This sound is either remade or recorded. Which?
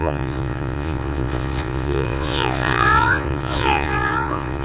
remade